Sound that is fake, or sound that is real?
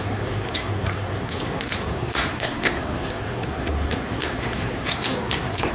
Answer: fake